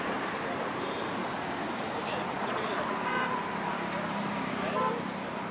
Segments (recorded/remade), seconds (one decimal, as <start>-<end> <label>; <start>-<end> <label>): 0.0-1.2 remade; 1.2-1.8 recorded; 1.8-5.5 remade